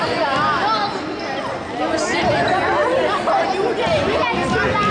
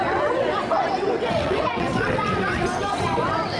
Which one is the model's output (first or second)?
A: second